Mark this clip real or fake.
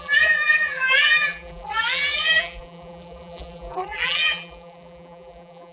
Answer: fake